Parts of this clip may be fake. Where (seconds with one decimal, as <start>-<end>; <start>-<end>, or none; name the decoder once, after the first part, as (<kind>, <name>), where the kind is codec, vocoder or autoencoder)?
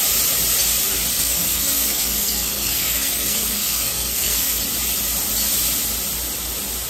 1.1-4.6 (codec, SNAC)